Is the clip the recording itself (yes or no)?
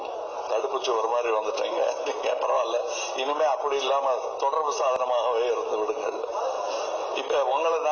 yes